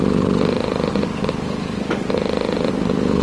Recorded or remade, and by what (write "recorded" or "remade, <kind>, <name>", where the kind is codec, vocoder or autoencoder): remade, vocoder, BigVGAN v2